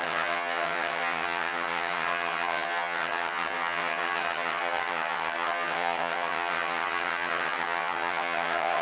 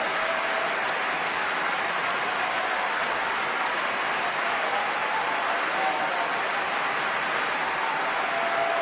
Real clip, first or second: second